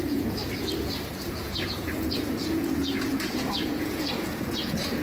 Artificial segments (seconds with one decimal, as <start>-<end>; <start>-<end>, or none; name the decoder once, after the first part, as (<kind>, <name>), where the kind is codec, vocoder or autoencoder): 0.0-0.4 (vocoder, Vocos); 1.2-5.0